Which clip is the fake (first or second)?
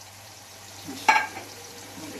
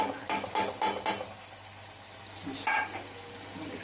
first